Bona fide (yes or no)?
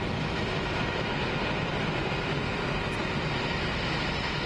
yes